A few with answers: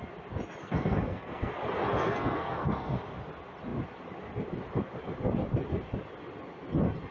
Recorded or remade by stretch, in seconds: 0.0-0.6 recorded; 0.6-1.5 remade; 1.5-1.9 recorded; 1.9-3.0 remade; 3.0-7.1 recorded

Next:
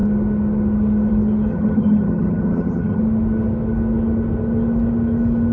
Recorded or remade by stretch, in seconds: 0.0-1.5 recorded; 1.5-3.0 remade; 3.0-5.5 recorded

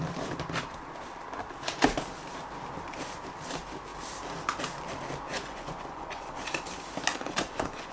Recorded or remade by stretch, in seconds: 0.0-5.3 recorded; 5.3-6.4 remade; 6.4-7.1 recorded; 7.1-7.9 remade

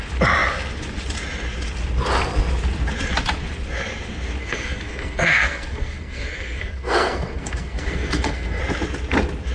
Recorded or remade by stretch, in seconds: 0.0-4.4 recorded; 4.4-8.6 remade; 8.6-9.5 recorded

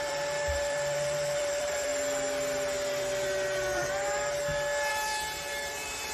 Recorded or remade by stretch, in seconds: 0.0-1.9 remade; 1.9-4.9 recorded; 4.9-6.1 remade

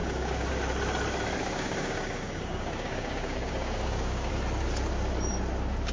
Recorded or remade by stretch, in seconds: 0.0-0.5 remade; 0.5-1.4 recorded; 1.4-4.3 remade; 4.3-5.9 recorded

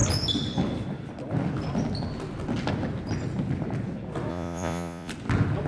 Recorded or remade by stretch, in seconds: 0.0-4.3 recorded; 4.3-5.1 remade; 5.1-5.7 recorded